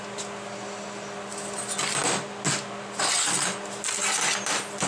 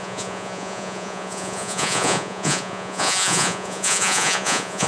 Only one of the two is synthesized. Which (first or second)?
second